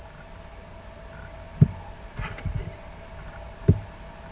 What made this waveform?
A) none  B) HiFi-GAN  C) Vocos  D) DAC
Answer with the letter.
A